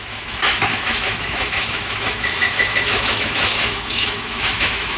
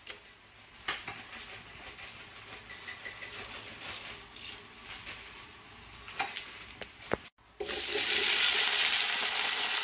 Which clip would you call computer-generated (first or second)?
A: first